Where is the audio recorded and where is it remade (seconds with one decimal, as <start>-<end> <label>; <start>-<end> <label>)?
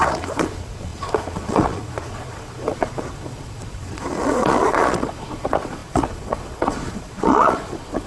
0.0-8.1 remade